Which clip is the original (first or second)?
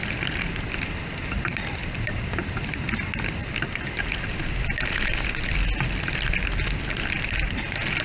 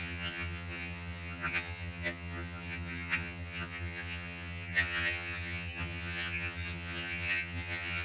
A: first